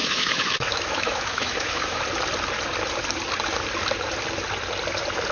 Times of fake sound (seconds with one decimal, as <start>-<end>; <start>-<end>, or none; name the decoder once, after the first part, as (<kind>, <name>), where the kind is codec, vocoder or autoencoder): 0.0-2.0 (autoencoder, DAC-VAE)